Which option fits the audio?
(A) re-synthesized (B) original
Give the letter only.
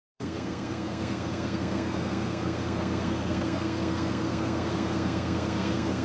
A